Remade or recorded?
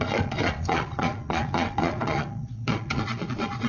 remade